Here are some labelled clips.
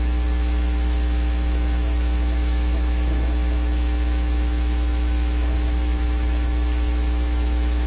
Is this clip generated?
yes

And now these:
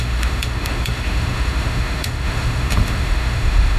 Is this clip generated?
yes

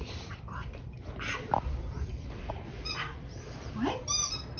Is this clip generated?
no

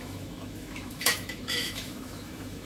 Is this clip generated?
yes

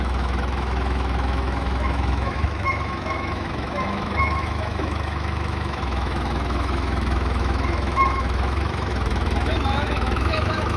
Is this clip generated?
yes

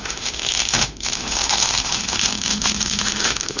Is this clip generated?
yes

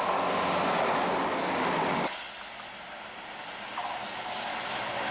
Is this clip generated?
no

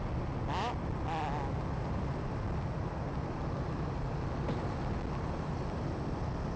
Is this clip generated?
no